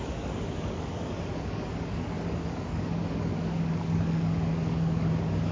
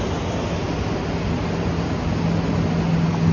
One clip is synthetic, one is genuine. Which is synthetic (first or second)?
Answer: first